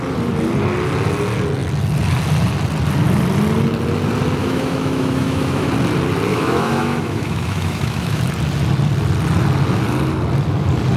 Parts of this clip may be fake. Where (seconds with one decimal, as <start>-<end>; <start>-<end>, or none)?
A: 4.4-5.7; 6.3-8.2